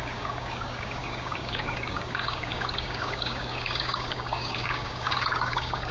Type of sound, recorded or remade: remade